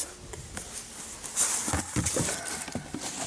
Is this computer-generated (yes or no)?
no